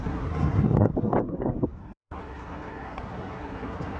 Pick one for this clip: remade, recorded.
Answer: remade